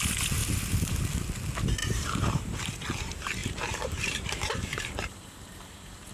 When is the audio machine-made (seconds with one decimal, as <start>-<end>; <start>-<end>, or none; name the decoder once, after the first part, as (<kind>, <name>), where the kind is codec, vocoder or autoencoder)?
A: 1.8-2.6 (vocoder, BigVGAN v2); 3.4-6.1